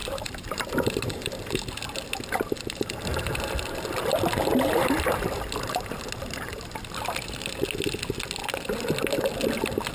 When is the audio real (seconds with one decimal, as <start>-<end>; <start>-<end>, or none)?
1.7-9.9

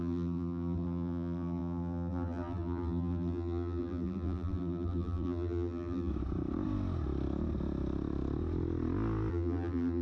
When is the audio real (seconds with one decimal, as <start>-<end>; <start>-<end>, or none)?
6.1-9.3

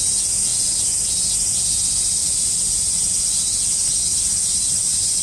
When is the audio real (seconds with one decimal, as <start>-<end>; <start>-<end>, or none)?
0.0-2.2; 3.1-4.1

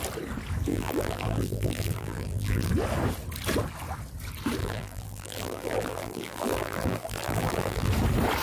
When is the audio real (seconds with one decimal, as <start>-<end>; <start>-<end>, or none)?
0.0-0.7; 2.7-4.6; 7.9-8.4

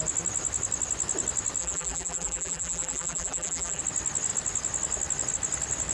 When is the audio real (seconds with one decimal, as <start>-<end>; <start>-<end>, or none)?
0.0-1.6; 3.8-5.9

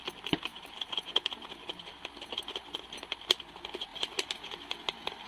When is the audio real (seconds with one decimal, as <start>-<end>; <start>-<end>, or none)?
0.0-0.5; 1.5-3.9; 4.4-5.3